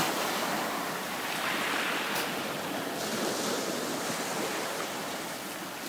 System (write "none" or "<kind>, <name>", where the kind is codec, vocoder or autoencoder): none